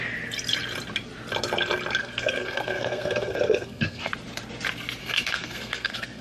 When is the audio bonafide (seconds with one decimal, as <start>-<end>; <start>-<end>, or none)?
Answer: 0.0-2.0; 4.1-5.0